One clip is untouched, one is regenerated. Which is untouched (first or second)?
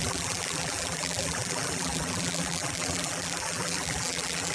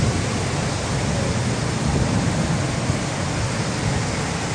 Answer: second